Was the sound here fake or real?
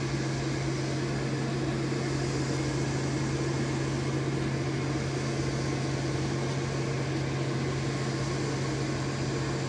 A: real